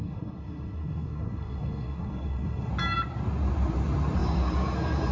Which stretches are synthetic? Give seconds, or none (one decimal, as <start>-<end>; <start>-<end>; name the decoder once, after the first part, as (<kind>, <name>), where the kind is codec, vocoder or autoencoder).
0.0-2.7 (codec, SNAC)